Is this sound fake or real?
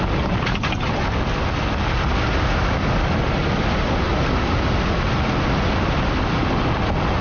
real